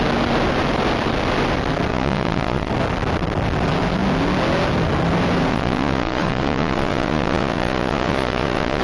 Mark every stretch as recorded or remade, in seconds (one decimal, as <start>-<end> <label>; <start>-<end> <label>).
0.0-1.9 recorded; 1.9-2.7 remade; 2.7-5.5 recorded; 5.5-8.8 remade